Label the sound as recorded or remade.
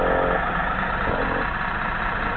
recorded